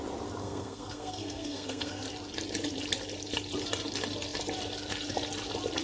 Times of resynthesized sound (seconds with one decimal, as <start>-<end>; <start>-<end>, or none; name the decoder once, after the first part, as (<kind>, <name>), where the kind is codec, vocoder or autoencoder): 0.4-2.0 (codec, SNAC)